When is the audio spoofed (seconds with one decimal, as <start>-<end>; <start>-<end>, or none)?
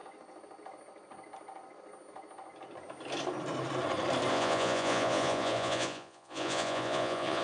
4.3-7.4